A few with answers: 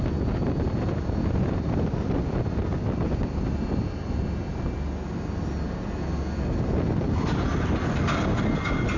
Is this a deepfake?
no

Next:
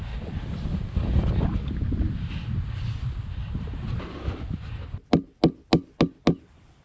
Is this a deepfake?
no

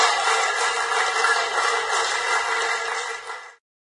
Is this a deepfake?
no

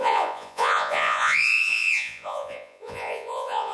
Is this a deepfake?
yes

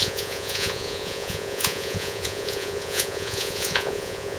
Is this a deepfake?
yes